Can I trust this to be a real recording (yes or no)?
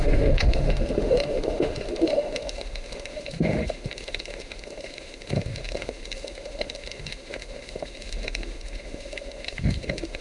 no